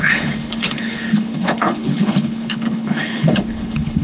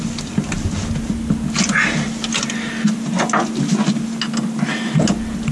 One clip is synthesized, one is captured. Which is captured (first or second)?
second